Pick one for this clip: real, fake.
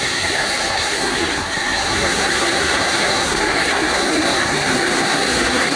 fake